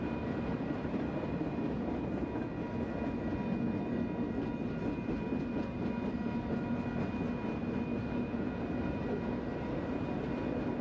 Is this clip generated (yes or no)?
no